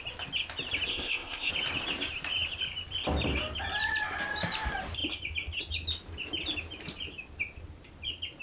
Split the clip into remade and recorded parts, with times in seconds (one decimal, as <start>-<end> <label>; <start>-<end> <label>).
0.0-0.9 recorded; 0.9-1.5 remade; 1.5-8.4 recorded